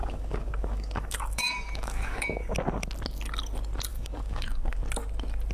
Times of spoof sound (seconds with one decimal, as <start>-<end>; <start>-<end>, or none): 0.0-2.5; 3.9-4.8